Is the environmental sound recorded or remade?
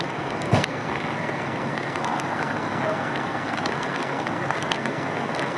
remade